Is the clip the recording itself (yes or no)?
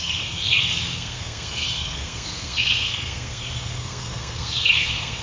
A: no